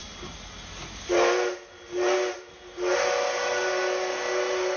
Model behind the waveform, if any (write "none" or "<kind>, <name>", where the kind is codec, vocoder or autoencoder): none